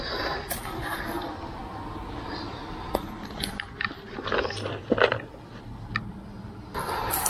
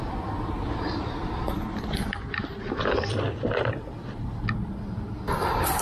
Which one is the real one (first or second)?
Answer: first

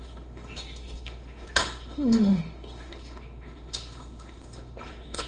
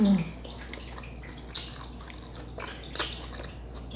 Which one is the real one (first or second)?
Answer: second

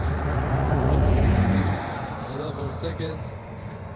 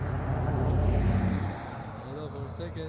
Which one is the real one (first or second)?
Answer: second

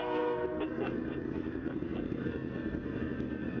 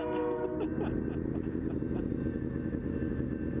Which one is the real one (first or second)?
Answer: second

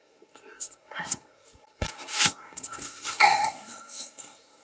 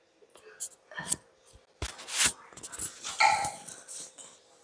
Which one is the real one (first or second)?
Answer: second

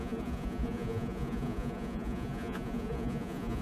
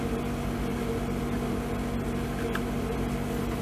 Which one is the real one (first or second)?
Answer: second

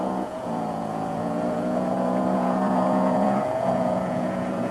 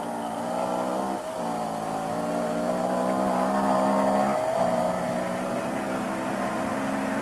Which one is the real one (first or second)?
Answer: second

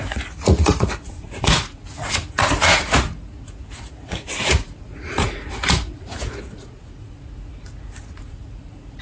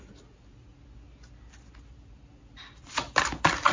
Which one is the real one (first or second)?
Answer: second